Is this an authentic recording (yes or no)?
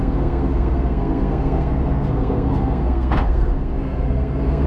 no